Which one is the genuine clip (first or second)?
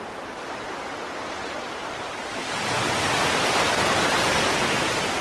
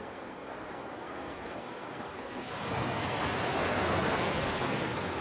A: first